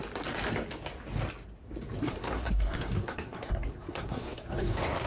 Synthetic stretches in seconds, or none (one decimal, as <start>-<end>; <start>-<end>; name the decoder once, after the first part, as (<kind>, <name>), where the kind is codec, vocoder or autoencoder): 2.0-5.1 (codec, SNAC)